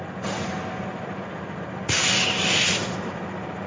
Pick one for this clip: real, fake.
real